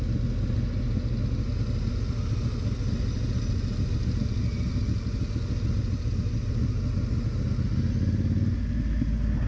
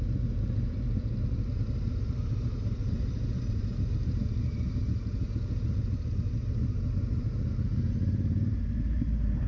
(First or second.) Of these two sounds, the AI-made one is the second